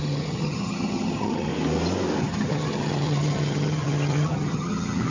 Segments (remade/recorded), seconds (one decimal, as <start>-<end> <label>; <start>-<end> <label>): 0.0-1.5 remade; 1.5-2.2 recorded; 2.2-5.1 remade